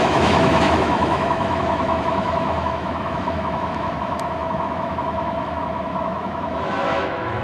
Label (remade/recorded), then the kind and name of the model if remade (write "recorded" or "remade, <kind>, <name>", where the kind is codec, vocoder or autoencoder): remade, autoencoder, DAC-VAE